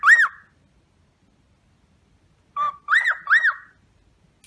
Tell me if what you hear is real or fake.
real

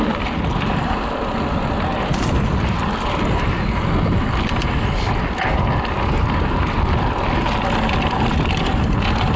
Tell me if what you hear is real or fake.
real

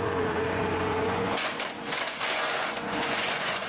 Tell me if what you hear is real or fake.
fake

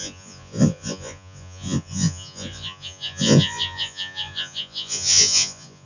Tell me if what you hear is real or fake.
fake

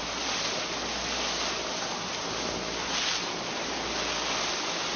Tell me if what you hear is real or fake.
real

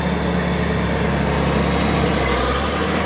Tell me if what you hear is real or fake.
real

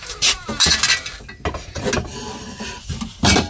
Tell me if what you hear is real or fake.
real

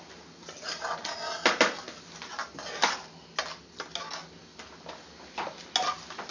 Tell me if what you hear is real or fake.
real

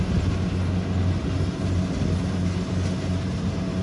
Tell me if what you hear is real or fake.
real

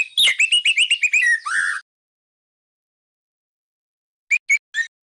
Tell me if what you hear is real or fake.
real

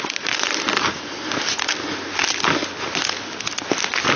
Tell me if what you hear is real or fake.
real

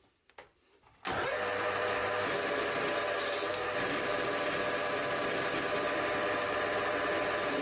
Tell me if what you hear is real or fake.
real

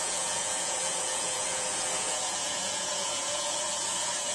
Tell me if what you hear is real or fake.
fake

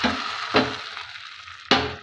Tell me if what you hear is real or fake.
real